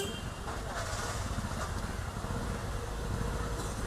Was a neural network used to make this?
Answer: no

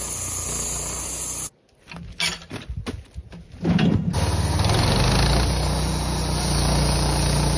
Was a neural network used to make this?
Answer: no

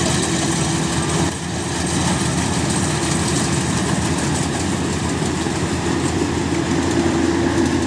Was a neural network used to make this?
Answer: no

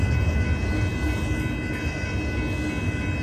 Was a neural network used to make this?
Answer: no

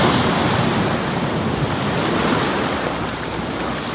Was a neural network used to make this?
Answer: no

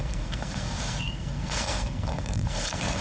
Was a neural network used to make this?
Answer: yes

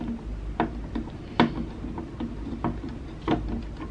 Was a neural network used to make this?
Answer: no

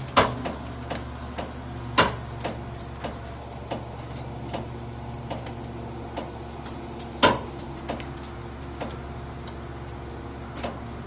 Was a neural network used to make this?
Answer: no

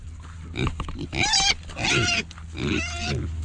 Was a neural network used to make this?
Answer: no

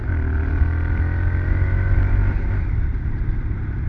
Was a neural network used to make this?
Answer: no